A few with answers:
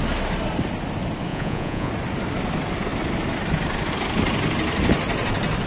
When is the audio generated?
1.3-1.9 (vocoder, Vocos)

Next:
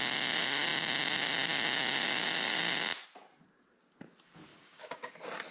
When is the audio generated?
4.5-5.1 (codec, DAC)

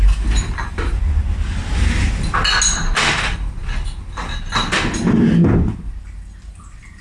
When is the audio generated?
none

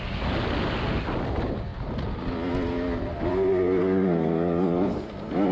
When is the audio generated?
3.8-4.9 (codec, DAC)